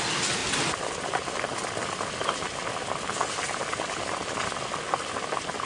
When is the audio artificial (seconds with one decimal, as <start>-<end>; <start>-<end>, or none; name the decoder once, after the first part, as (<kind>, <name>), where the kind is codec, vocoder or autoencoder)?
none